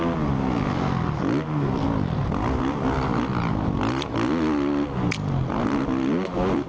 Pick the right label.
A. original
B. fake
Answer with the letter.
A